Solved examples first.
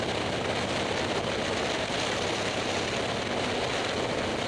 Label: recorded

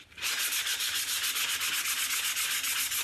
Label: recorded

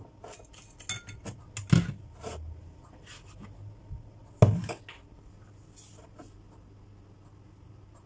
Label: recorded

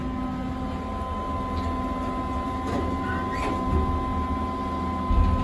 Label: recorded